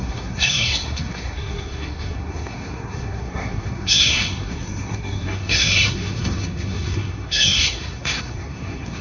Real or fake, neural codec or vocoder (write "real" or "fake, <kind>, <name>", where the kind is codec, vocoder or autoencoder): fake, codec, SNAC